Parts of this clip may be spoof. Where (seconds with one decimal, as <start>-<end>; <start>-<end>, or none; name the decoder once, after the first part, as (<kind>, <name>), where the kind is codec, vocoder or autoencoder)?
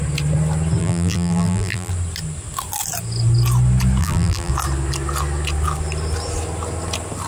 0.8-1.9 (vocoder, BigVGAN v2); 4.0-4.5